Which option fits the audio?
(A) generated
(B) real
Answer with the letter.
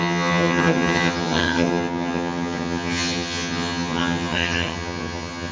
A